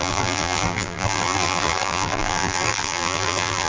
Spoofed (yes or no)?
yes